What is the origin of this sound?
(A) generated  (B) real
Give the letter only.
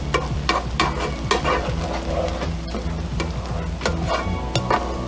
B